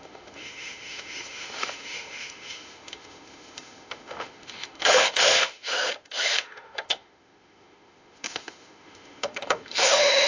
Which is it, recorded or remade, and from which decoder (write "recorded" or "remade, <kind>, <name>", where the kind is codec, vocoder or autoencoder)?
remade, autoencoder, DAC-VAE